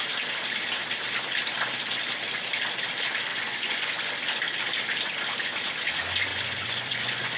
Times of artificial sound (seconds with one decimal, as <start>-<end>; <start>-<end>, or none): 3.3-4.1; 6.3-7.4